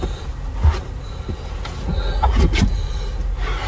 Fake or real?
real